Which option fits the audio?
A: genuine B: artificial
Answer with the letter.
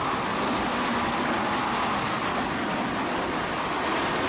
A